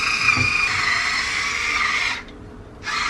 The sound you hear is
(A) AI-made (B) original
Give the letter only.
B